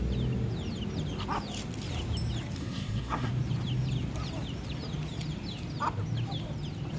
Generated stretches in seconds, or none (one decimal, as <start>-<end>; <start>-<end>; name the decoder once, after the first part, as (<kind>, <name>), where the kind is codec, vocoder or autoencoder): 2.6-3.3 (codec, SNAC)

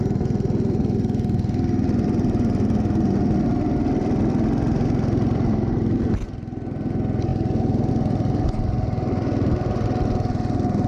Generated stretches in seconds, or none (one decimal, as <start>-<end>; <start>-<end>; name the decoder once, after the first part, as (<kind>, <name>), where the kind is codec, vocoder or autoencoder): none

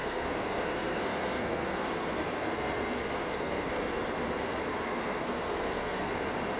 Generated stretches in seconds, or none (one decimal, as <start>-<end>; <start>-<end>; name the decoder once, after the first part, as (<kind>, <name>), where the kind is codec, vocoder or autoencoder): 0.0-4.0 (codec, SNAC); 4.7-6.1

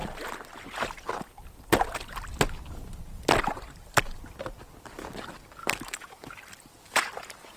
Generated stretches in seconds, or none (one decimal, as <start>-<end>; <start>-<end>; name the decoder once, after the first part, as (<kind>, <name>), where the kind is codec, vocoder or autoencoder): 5.6-6.4 (autoencoder, DAC-VAE)

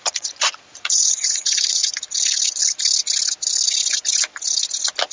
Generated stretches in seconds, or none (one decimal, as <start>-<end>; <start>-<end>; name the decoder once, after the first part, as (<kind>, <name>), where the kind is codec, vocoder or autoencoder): 0.0-1.8 (vocoder, Vocos)

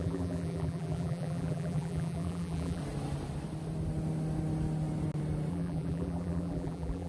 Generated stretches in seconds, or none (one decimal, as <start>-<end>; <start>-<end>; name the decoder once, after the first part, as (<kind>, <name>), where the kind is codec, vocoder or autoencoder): 0.0-2.8 (vocoder, BigVGAN v2); 5.5-7.1

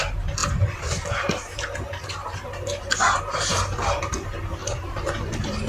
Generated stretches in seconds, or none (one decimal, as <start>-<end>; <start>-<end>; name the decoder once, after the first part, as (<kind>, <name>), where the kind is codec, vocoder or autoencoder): 4.6-5.1 (vocoder, BigVGAN v2)